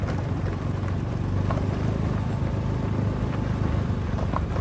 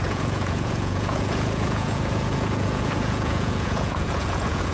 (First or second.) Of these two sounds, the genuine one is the first